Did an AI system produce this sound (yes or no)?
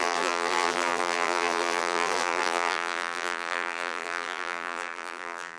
yes